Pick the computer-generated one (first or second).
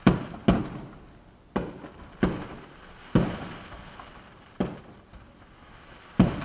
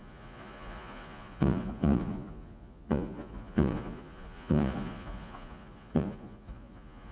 second